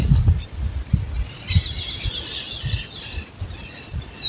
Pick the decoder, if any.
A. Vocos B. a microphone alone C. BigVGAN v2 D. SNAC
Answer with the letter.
C